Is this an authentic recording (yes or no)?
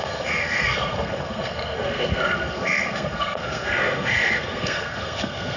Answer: no